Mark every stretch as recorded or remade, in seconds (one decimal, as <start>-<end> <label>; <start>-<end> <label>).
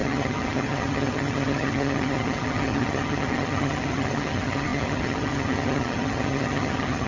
0.0-7.1 remade